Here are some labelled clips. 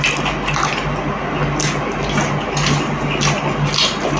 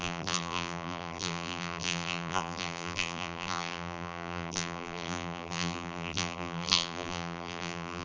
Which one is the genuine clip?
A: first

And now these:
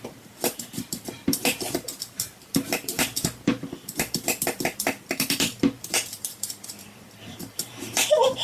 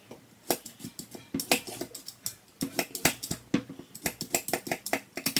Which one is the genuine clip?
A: second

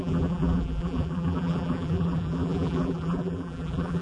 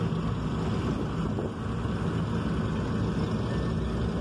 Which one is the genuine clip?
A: second